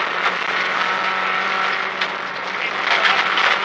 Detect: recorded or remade recorded